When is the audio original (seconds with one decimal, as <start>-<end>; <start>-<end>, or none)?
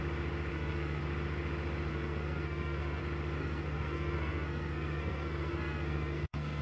0.0-0.5; 1.0-1.9; 3.0-3.4